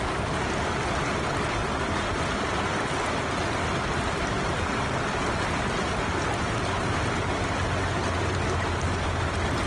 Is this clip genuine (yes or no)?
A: yes